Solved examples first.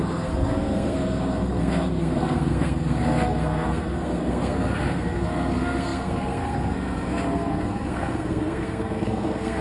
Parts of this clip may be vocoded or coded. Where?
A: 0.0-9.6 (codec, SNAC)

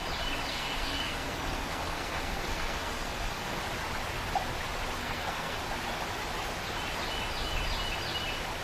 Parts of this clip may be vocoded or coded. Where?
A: 0.5-3.6 (codec, SNAC); 5.0-5.6

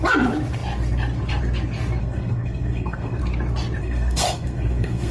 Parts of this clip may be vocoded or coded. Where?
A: 2.0-3.2 (codec, SNAC); 3.8-5.1

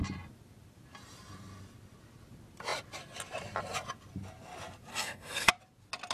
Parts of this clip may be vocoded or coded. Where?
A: 4.9-5.5 (codec, SNAC)

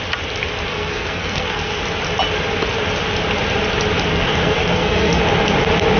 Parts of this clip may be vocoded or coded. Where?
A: 0.7-1.8 (codec, SNAC); 4.1-5.2

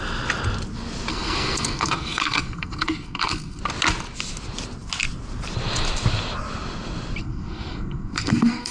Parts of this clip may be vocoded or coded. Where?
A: 1.1-3.6 (codec, SNAC); 7.2-8.7